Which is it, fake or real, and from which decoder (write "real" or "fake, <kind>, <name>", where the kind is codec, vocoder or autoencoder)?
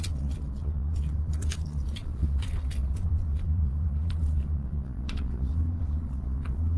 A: fake, vocoder, Vocos